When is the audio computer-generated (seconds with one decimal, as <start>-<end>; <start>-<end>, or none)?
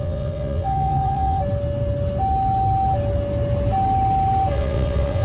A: 0.0-1.4; 4.5-5.2